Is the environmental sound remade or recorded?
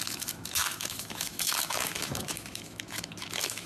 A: remade